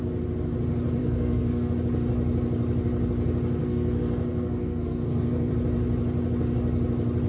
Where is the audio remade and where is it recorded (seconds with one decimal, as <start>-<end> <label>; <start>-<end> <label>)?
0.0-1.0 recorded; 1.0-1.7 remade; 1.7-3.6 recorded; 3.6-5.5 remade; 5.5-7.3 recorded